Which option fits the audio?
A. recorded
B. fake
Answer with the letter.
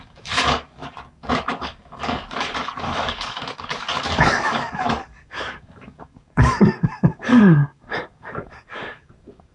B